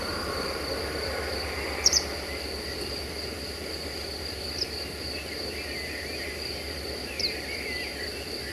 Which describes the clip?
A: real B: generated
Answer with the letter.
A